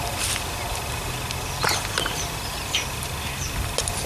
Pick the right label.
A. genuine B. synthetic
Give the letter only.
A